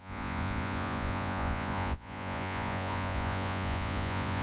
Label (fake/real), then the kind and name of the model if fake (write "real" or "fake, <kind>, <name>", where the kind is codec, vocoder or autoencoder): fake, vocoder, Vocos